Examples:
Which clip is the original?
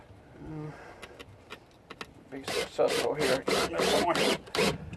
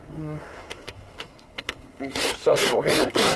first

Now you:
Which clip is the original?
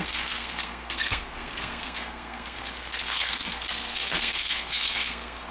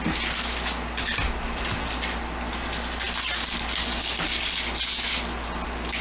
second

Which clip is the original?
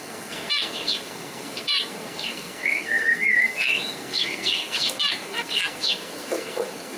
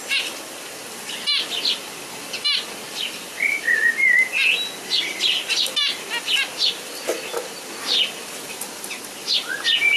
second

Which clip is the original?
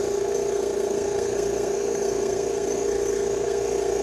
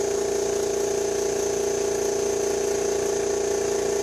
second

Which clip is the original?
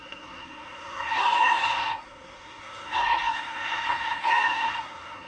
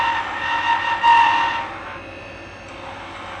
second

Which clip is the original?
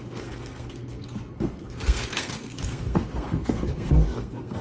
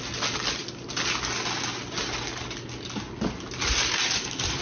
second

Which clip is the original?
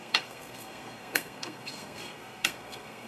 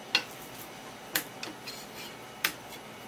second